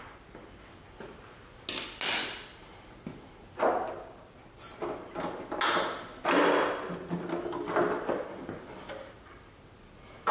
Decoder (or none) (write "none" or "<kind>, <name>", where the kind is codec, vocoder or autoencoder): none